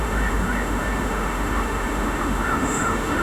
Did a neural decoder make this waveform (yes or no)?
yes